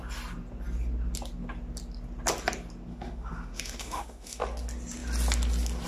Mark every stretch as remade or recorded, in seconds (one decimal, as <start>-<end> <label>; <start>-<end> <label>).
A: 0.0-2.9 recorded; 2.9-4.4 remade; 4.4-5.9 recorded